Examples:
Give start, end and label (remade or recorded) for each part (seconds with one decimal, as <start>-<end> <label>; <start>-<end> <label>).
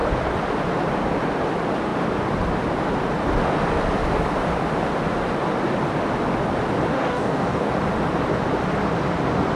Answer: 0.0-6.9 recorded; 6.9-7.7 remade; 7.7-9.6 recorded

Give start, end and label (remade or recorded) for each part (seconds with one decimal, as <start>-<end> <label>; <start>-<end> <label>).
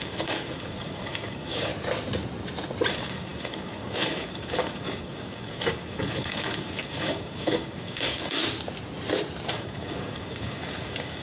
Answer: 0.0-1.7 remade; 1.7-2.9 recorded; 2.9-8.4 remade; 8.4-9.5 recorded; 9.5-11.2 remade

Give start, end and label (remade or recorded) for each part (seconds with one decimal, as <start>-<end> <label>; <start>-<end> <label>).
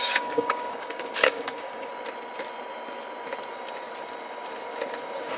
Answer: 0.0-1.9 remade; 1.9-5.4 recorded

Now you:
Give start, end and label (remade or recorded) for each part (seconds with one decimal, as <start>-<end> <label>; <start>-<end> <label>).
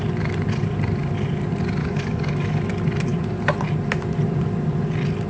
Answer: 0.0-1.8 recorded; 1.8-2.6 remade; 2.6-5.3 recorded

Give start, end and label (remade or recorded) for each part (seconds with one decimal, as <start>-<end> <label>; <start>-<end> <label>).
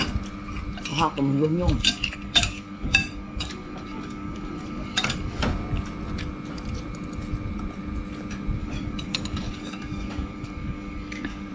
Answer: 0.0-0.9 recorded; 0.9-5.4 remade; 5.4-8.6 recorded; 8.6-11.5 remade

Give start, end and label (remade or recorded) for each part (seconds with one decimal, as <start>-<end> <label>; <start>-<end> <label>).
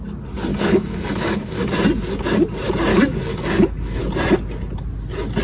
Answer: 0.0-0.5 recorded; 0.5-1.7 remade; 1.7-2.9 recorded; 2.9-4.0 remade; 4.0-5.4 recorded